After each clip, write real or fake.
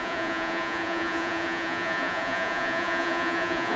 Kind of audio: fake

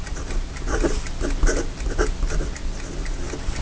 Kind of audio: real